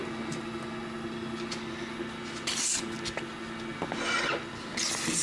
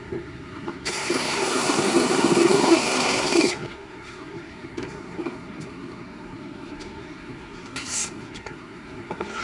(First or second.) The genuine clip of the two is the first